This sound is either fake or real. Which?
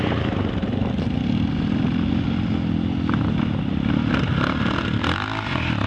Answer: real